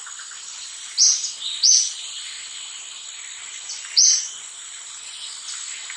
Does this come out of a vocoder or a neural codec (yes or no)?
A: no